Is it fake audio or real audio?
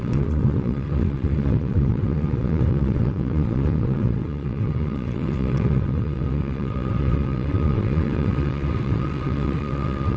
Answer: fake